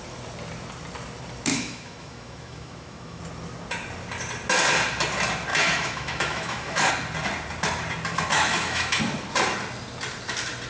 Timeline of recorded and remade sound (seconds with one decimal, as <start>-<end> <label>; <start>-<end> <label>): 0.0-1.5 recorded; 1.5-3.2 remade; 3.2-5.5 recorded; 5.5-6.9 remade; 6.9-8.3 recorded; 8.3-9.0 remade; 9.0-10.7 recorded